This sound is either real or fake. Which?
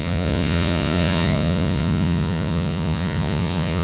fake